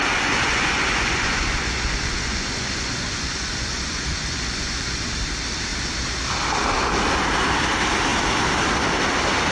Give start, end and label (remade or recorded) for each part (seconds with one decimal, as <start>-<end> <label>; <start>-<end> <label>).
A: 0.0-5.1 remade; 5.1-9.5 recorded